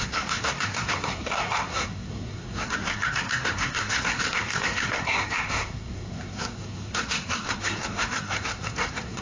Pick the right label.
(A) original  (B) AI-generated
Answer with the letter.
B